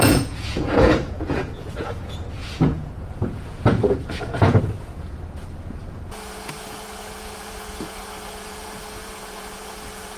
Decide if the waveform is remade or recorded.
remade